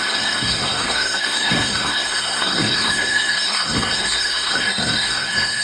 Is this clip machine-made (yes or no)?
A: yes